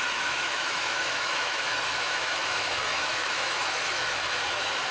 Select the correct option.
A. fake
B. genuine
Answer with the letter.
A